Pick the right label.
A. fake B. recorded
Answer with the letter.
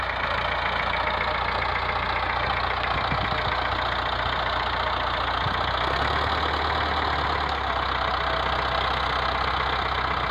B